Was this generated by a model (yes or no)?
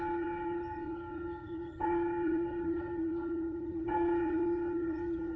yes